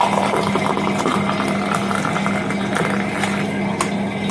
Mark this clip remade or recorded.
recorded